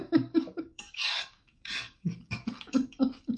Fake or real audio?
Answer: fake